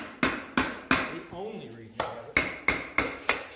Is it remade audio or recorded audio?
recorded